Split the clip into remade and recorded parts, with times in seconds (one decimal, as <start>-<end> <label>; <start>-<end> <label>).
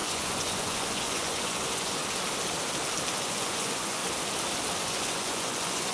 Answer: 0.0-2.0 remade; 2.0-3.2 recorded; 3.2-4.0 remade; 4.0-4.8 recorded; 4.8-5.9 remade